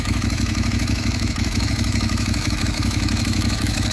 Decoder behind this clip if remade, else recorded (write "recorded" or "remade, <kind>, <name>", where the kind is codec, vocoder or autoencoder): remade, autoencoder, DAC-VAE